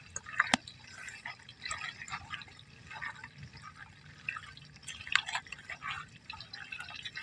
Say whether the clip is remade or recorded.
recorded